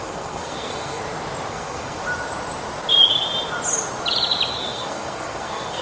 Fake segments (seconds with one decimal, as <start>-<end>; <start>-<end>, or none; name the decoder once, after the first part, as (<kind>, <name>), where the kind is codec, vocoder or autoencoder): 0.0-1.0 (codec, SNAC); 1.5-2.0; 4.5-5.8